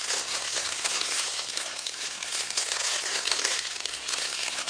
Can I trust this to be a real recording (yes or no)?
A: no